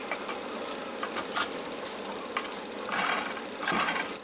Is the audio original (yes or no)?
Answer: yes